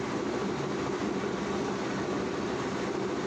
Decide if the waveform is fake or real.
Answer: real